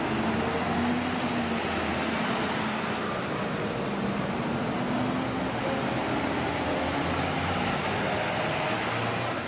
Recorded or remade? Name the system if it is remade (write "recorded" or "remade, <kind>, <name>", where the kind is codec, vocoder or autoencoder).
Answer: recorded